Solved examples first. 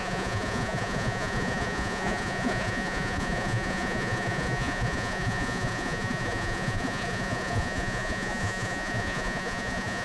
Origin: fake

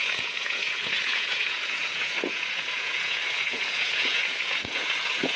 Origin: fake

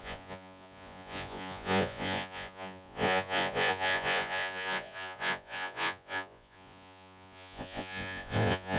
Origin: fake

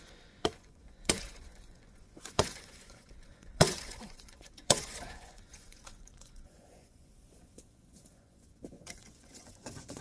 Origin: fake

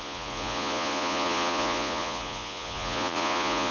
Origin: fake